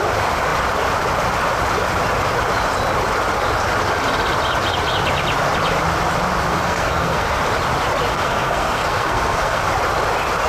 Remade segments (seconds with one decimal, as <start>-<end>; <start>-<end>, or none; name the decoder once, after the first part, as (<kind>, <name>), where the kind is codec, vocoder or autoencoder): 6.5-7.4 (codec, SNAC); 8.1-9.7